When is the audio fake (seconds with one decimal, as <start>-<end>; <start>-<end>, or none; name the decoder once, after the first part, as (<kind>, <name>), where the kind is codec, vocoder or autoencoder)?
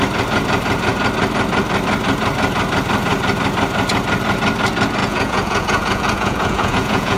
5.0-7.2 (vocoder, Vocos)